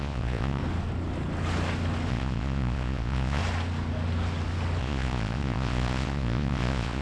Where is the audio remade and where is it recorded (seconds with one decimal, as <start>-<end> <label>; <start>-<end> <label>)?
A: 0.0-0.6 remade; 0.6-2.1 recorded; 2.1-3.4 remade; 3.4-4.8 recorded; 4.8-7.0 remade